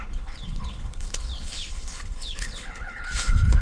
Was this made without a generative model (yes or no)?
no